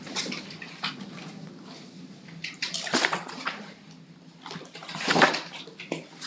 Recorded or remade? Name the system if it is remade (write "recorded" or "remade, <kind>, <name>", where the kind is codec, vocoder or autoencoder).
recorded